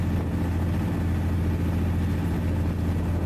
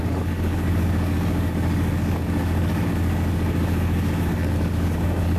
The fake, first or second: second